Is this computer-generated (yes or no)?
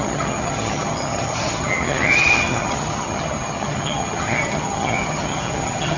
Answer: yes